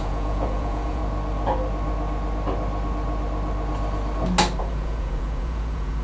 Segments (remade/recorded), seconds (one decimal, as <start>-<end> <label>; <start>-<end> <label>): 0.0-1.0 remade; 1.0-4.6 recorded; 4.6-6.0 remade

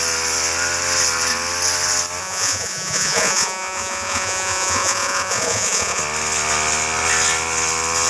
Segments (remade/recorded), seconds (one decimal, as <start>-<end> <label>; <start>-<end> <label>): 0.0-2.2 recorded; 2.2-6.0 remade; 6.0-8.1 recorded

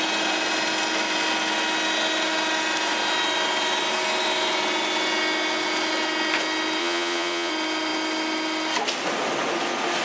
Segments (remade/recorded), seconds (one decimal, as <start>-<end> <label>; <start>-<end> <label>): 0.0-6.8 recorded; 6.8-7.5 remade; 7.5-10.0 recorded

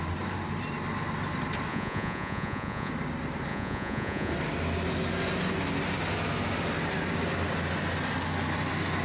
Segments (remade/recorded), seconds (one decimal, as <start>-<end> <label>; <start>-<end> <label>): 0.0-1.7 recorded; 1.7-2.9 remade; 2.9-3.5 recorded; 3.5-4.3 remade; 4.3-9.0 recorded